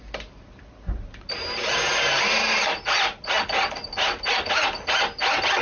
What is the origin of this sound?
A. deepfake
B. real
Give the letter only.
B